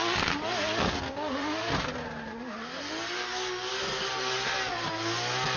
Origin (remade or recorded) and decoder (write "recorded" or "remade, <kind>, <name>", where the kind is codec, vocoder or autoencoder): recorded